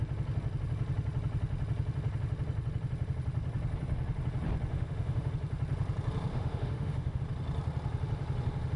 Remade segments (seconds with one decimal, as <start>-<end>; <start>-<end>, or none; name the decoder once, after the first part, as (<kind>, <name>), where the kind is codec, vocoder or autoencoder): 4.7-5.3 (autoencoder, DAC-VAE); 6.3-7.2